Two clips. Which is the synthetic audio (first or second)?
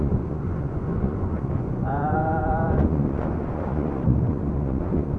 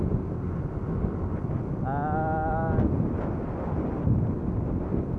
first